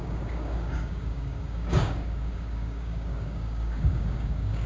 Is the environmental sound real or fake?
fake